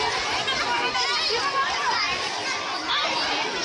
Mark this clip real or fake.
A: real